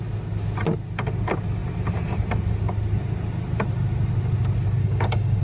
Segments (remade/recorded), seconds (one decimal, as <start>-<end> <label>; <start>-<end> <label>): 0.0-4.8 recorded; 4.8-5.4 remade